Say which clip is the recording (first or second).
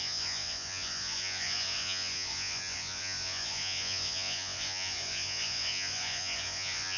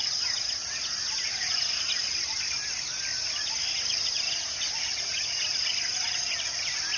second